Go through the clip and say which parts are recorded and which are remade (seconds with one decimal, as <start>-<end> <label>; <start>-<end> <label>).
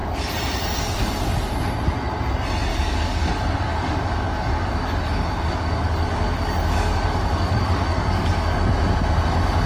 0.0-2.7 recorded; 2.7-3.3 remade; 3.3-3.7 recorded; 3.7-8.6 remade; 8.6-9.7 recorded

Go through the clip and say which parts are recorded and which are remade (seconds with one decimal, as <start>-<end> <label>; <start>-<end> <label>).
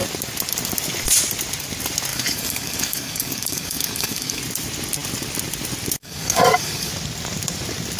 0.0-2.1 recorded; 2.1-4.4 remade; 4.4-6.0 recorded; 6.0-6.9 remade; 6.9-8.0 recorded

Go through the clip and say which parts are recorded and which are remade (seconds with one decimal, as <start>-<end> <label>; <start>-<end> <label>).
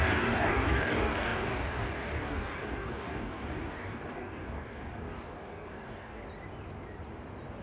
0.0-6.2 remade; 6.2-7.6 recorded